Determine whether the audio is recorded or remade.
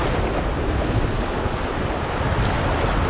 recorded